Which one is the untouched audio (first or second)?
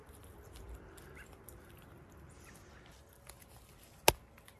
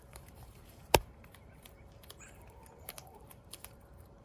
first